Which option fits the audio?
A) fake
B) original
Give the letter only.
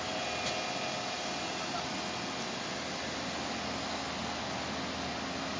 B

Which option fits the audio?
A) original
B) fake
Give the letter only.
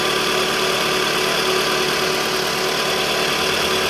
A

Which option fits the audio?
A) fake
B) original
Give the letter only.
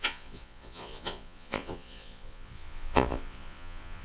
A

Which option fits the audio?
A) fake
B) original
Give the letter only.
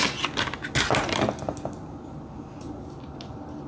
B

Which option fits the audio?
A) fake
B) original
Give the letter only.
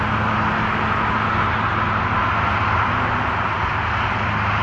B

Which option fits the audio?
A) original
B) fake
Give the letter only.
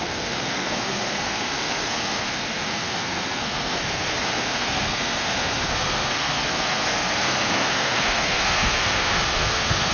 B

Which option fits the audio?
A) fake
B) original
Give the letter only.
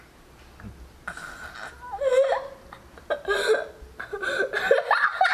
B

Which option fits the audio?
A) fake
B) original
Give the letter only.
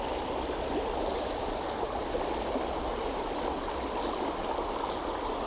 B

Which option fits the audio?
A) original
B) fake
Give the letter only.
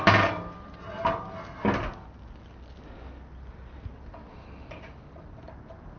A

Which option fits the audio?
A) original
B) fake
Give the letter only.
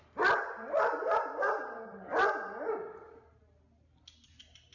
A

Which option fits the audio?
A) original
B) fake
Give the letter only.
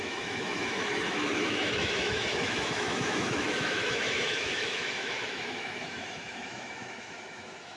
B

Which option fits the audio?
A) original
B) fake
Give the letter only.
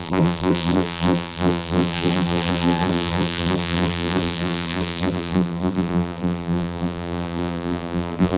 B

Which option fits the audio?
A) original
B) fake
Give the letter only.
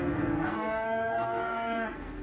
B